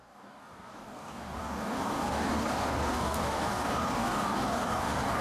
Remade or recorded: remade